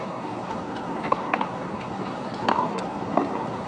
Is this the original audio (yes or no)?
no